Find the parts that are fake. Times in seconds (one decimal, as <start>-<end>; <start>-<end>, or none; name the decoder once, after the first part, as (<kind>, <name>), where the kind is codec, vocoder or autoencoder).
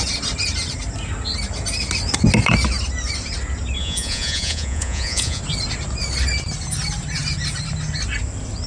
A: 3.8-5.4 (vocoder, Vocos)